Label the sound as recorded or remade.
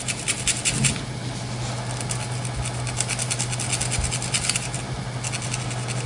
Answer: recorded